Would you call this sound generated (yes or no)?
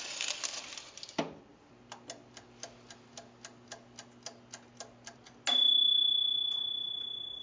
no